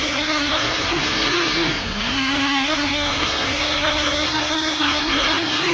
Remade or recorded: remade